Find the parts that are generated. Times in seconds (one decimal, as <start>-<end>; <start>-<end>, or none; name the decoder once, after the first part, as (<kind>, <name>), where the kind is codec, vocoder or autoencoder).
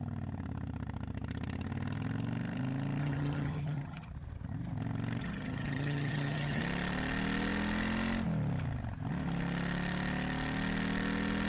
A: 3.0-4.1 (vocoder, HiFi-GAN); 5.2-6.6